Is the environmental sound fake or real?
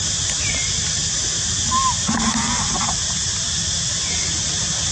real